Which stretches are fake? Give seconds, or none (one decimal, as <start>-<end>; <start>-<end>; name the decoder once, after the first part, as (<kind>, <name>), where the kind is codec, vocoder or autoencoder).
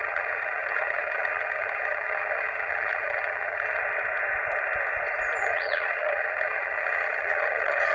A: 0.0-3.8 (vocoder, HiFi-GAN); 5.4-7.9